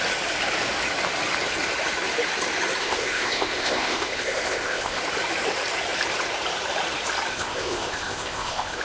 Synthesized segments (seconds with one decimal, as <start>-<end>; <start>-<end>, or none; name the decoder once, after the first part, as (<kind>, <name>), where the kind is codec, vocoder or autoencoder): 2.8-5.0 (codec, ZipCodec); 7.3-8.8